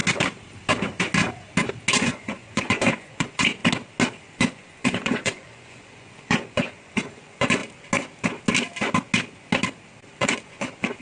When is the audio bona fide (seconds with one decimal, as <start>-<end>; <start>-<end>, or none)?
0.0-1.9; 3.6-4.3; 7.6-10.2